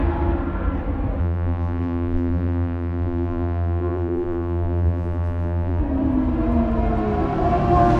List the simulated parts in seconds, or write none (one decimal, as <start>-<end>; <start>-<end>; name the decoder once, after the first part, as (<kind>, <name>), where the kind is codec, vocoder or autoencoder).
1.2-5.8 (vocoder, BigVGAN v2)